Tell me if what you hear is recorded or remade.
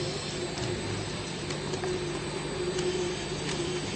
recorded